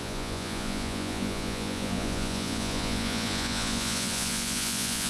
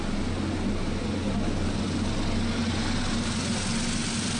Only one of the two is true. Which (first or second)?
second